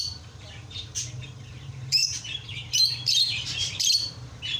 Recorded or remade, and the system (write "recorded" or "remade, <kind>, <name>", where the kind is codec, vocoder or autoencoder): remade, vocoder, BigVGAN v2